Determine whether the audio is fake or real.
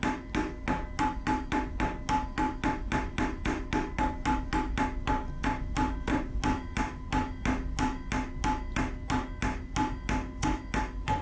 real